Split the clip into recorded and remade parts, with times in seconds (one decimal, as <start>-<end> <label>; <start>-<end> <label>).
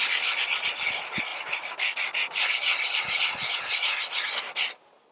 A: 0.0-5.1 recorded